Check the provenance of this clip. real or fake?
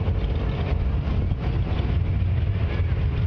real